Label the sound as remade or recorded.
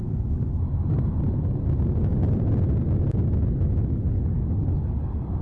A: recorded